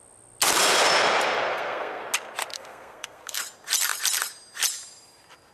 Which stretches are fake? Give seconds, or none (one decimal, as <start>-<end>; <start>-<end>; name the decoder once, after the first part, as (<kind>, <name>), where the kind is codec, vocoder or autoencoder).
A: 1.5-2.0 (codec, SNAC); 2.5-3.4